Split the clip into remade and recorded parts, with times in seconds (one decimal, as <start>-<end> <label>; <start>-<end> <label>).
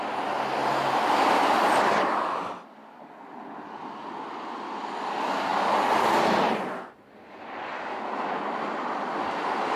0.0-9.8 recorded